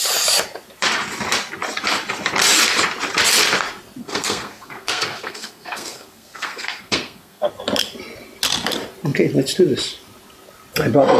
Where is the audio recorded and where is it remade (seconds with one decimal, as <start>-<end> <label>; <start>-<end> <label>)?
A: 0.0-4.0 recorded; 4.0-7.5 remade; 7.5-11.2 recorded